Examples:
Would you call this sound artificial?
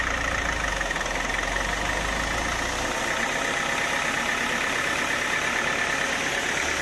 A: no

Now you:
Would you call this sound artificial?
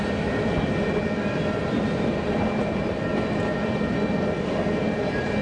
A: no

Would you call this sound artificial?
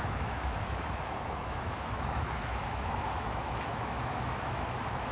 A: yes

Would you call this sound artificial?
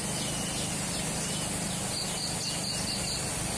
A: no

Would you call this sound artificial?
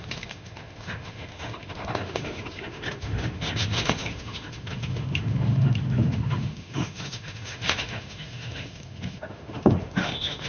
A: yes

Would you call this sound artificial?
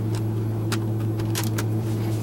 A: no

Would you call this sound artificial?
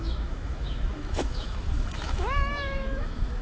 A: yes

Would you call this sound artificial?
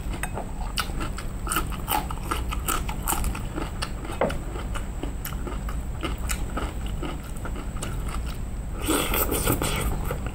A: no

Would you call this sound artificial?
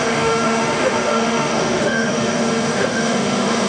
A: yes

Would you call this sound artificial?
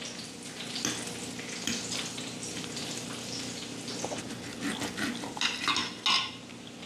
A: no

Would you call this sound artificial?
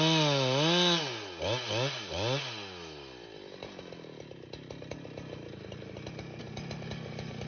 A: no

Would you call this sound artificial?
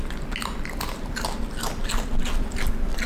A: no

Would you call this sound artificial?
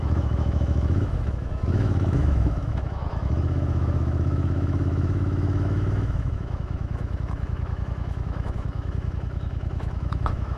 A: yes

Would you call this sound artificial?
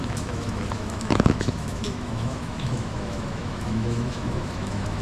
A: yes